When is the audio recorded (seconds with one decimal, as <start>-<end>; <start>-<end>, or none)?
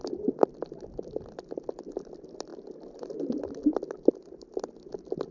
0.0-5.3